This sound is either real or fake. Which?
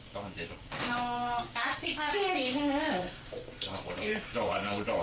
fake